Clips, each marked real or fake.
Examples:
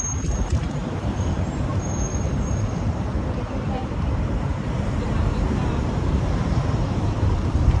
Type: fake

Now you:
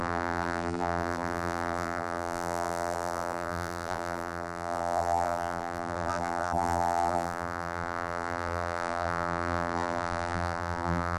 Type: fake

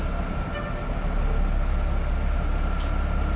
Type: real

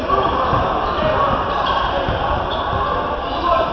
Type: real